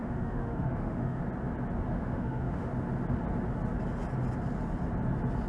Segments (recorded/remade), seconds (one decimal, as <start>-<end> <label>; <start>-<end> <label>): 0.0-1.2 remade; 1.2-1.9 recorded; 1.9-2.7 remade; 2.7-5.5 recorded